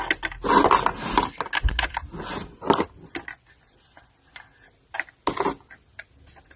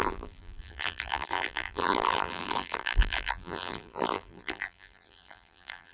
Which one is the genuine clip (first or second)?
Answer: first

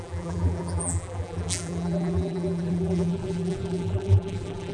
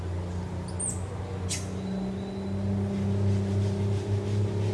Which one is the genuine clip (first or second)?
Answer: second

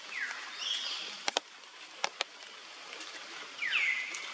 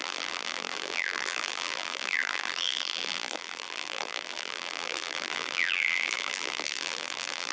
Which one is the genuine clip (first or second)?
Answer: first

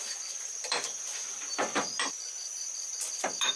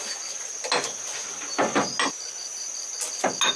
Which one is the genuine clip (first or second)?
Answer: second